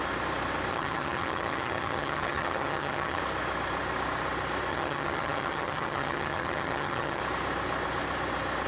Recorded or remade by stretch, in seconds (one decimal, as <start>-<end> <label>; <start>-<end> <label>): 0.0-0.7 recorded; 0.7-3.2 remade; 3.2-4.7 recorded; 4.7-7.2 remade; 7.2-8.7 recorded